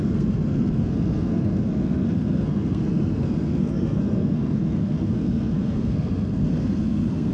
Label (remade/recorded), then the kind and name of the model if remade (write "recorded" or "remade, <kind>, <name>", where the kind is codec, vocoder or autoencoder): remade, codec, SNAC